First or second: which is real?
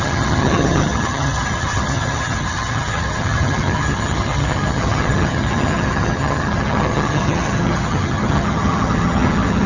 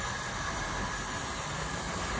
second